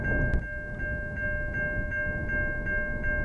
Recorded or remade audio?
recorded